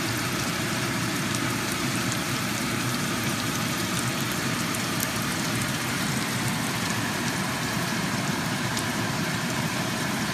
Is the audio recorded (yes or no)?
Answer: no